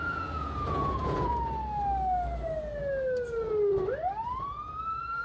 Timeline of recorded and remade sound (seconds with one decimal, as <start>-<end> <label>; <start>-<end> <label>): 0.0-1.3 remade; 1.3-4.4 recorded; 4.4-5.2 remade